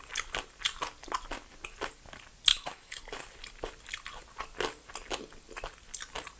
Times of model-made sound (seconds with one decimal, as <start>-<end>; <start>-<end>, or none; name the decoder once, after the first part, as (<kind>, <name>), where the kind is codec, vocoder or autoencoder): 2.5-3.0 (autoencoder, DAC-VAE)